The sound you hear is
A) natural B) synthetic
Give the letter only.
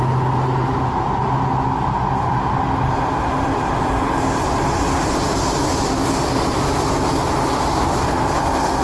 A